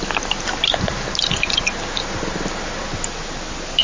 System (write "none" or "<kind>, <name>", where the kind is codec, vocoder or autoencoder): none